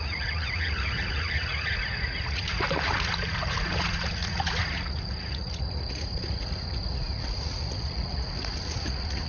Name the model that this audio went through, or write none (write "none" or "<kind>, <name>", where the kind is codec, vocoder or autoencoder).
vocoder, Vocos